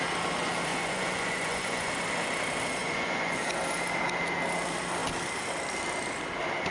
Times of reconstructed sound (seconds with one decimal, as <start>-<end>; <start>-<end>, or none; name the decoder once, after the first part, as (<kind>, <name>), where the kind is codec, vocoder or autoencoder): 0.7-1.9 (vocoder, Vocos); 2.8-3.4

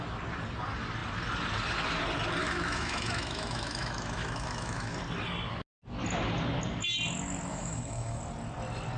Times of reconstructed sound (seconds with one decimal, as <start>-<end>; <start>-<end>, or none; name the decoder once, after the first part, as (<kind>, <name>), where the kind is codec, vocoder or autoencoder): 2.4-5.0 (autoencoder, DAC-VAE); 7.5-8.2